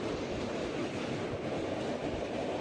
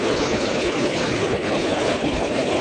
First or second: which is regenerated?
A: second